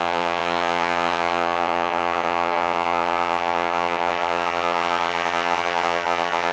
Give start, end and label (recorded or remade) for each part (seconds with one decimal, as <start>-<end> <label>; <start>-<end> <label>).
0.0-6.5 remade